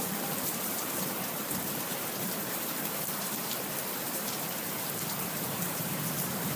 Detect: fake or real fake